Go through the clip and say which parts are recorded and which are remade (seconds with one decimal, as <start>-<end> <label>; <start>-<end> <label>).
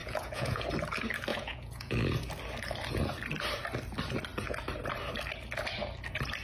0.0-0.6 remade; 0.6-1.3 recorded; 1.3-1.9 remade; 1.9-6.4 recorded